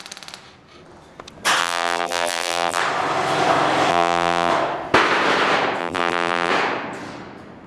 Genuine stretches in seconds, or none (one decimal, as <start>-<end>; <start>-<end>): 0.0-1.6; 2.8-3.9; 4.5-5.8; 6.5-7.7